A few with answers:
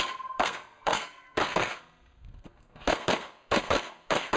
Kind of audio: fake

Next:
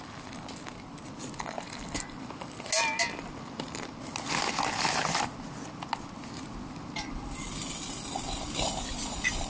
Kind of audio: real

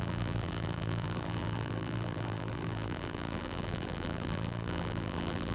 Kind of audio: fake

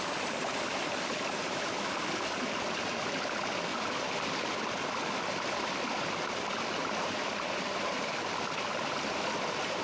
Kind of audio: real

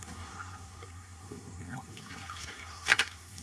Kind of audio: fake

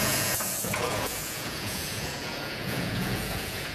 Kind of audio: fake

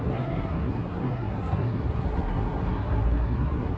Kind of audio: fake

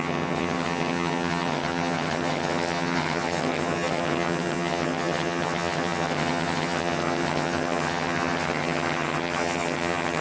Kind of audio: fake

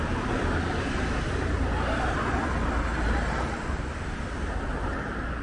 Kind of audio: real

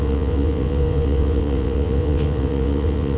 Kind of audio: fake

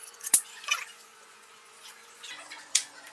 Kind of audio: fake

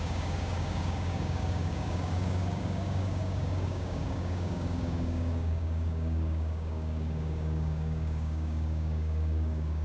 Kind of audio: fake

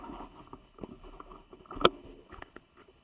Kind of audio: fake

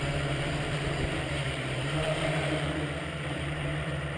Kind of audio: fake